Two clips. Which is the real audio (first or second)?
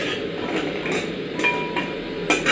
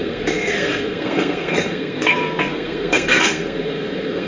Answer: first